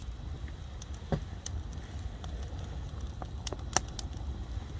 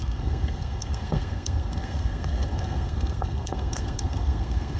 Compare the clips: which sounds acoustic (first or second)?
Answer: first